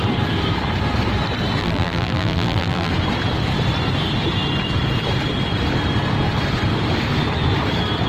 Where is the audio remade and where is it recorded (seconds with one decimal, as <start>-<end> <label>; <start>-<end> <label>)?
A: 0.0-1.6 recorded; 1.6-2.9 remade; 2.9-8.1 recorded